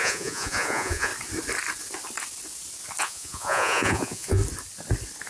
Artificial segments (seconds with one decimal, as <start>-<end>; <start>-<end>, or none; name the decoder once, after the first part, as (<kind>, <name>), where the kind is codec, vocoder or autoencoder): 0.0-1.1 (vocoder, Vocos); 3.0-4.4